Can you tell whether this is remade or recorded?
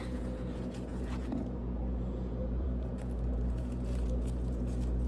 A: remade